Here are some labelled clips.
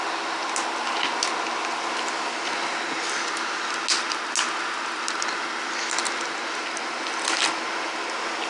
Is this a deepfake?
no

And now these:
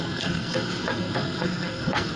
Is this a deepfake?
yes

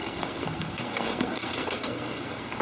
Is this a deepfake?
yes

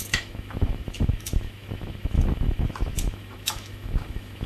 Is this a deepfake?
yes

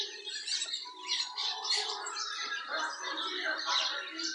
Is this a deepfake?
yes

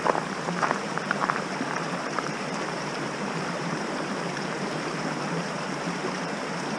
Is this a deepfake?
yes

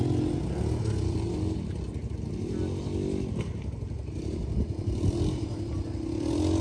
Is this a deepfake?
no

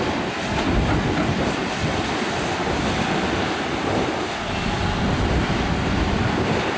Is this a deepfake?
no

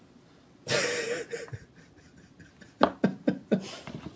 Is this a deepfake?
no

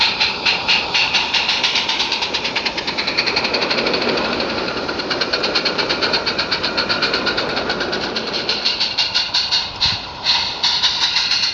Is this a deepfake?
yes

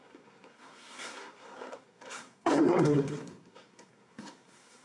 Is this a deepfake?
yes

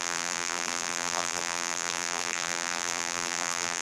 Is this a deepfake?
yes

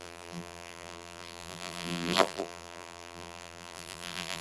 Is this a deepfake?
yes